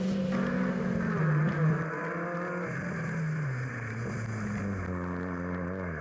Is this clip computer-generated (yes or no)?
no